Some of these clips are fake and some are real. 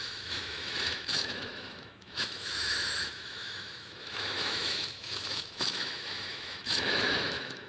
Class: fake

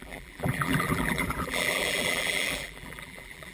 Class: fake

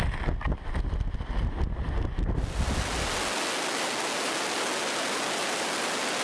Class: real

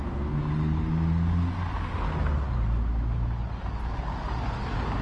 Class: real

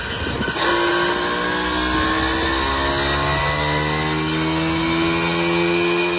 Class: real